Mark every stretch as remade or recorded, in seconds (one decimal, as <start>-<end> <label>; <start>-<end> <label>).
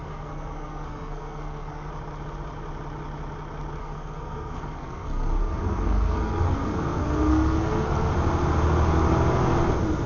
0.0-1.9 remade; 1.9-3.8 recorded; 3.8-8.1 remade; 8.1-10.1 recorded